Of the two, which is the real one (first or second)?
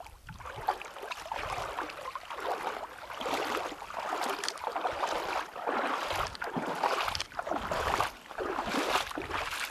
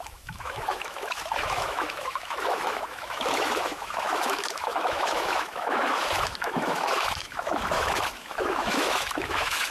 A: first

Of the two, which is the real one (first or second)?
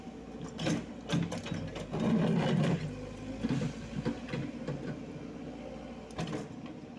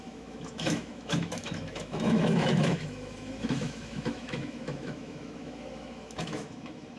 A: first